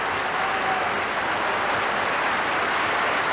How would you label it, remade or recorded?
recorded